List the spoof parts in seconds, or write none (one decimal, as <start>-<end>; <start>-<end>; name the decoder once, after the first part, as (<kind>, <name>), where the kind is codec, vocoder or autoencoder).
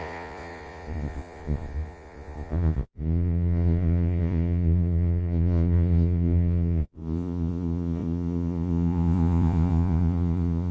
0.0-10.7 (vocoder, Vocos)